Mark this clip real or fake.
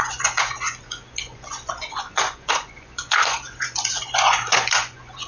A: fake